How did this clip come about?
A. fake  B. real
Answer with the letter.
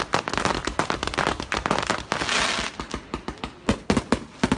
B